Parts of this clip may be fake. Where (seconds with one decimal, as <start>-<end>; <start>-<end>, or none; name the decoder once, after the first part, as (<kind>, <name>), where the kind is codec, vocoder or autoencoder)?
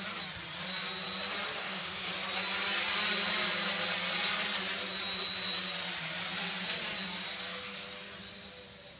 1.6-2.1 (autoencoder, DAC-VAE)